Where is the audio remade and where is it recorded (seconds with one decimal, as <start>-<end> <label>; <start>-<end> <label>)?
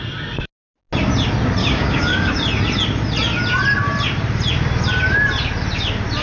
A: 0.0-1.6 recorded; 1.6-2.3 remade; 2.3-6.2 recorded